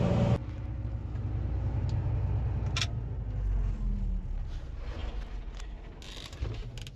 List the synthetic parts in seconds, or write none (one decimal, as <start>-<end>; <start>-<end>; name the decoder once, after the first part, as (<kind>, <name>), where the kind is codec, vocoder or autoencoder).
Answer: none